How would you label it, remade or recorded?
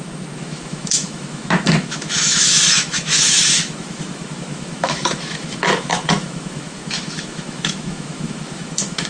remade